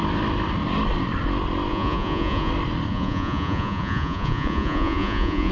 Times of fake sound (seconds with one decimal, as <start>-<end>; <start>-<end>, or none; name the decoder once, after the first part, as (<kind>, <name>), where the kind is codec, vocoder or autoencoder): 1.7-2.5 (vocoder, Vocos); 2.9-5.5

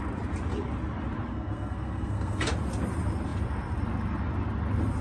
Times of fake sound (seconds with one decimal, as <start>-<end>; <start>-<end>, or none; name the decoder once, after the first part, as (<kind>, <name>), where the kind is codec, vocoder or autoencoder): 1.3-2.4 (codec, SNAC)